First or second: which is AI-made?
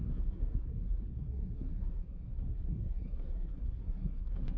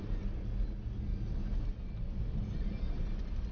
first